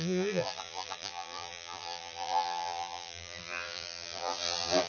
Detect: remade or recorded remade